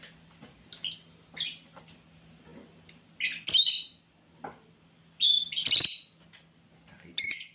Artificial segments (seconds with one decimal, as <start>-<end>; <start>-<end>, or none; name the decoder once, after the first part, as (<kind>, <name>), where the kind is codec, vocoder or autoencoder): none